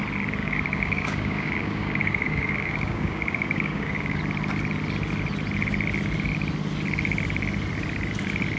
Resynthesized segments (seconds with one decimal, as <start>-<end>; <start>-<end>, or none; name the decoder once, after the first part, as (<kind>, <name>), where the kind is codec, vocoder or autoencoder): 0.4-4.2 (codec, DAC)